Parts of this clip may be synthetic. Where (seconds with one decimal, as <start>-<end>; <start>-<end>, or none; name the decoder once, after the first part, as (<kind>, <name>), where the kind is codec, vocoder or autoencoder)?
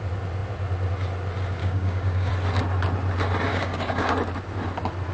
1.6-2.3 (codec, DAC); 3.5-4.1